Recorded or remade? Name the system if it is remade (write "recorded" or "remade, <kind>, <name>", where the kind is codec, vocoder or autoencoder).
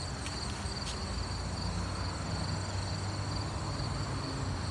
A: recorded